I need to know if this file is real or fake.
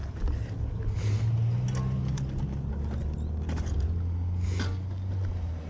real